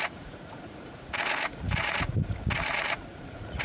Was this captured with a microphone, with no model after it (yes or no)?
no